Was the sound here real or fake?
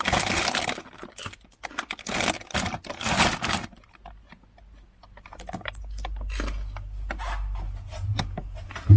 real